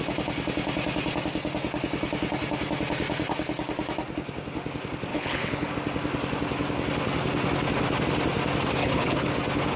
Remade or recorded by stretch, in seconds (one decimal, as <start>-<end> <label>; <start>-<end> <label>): 0.0-5.1 recorded; 5.1-5.7 remade; 5.7-8.8 recorded; 8.8-9.3 remade; 9.3-9.8 recorded